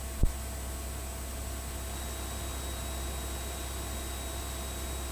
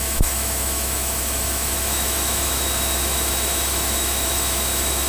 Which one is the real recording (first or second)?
first